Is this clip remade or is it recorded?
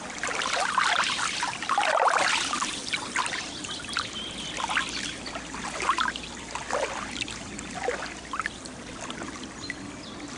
recorded